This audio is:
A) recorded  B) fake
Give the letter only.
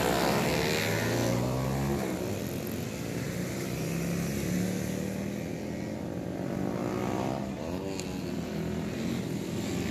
A